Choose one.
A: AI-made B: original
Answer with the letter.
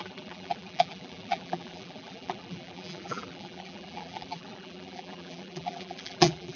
A